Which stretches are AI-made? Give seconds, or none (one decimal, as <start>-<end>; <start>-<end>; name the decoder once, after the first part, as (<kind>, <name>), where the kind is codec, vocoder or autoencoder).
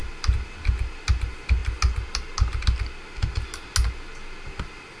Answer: none